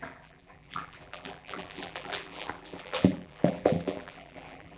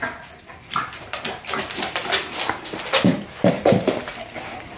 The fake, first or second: first